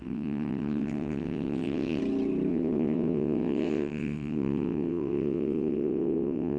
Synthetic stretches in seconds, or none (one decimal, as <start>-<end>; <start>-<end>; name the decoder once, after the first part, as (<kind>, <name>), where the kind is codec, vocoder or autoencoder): 0.0-2.0 (vocoder, WaveNeXt); 2.5-6.6